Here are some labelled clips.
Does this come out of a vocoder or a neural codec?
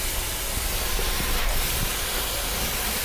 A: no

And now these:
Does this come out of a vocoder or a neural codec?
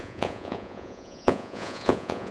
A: yes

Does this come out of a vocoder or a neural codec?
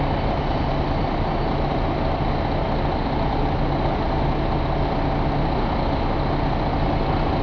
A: no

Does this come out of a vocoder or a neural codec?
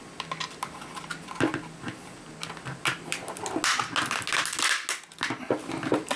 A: no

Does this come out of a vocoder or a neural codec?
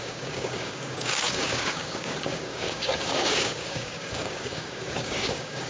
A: yes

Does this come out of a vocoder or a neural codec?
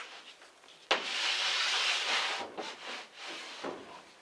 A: no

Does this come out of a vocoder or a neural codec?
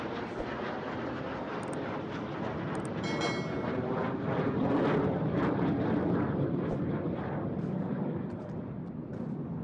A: no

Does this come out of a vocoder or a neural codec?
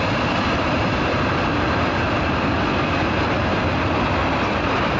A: no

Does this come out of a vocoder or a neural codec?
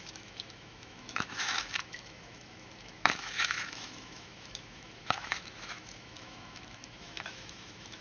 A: yes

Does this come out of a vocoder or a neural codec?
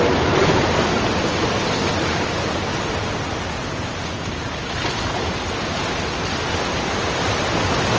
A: no